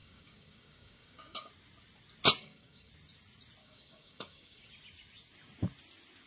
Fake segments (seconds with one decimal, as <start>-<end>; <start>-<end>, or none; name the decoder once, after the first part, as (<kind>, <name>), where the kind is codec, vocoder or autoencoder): 0.0-1.5 (codec, DAC); 2.4-2.9; 3.6-4.7